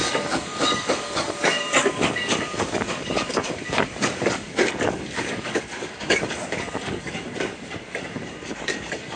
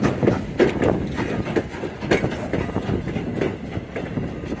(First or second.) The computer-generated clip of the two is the first